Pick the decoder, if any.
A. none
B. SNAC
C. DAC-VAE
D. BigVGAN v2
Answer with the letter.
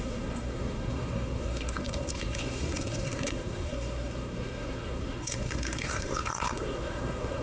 B